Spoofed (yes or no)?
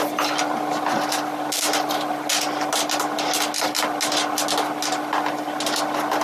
no